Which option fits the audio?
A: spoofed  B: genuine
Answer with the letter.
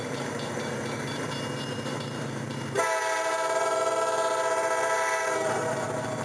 A